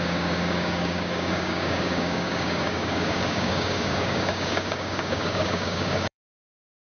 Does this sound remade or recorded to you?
remade